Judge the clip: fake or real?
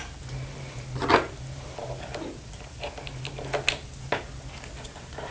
real